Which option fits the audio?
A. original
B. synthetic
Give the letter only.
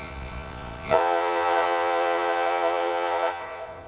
B